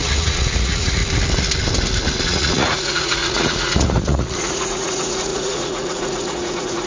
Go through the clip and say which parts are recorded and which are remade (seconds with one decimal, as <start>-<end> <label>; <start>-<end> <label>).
0.0-1.0 remade; 1.0-2.2 recorded; 2.2-6.9 remade